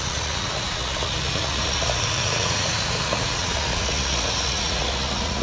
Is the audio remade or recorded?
remade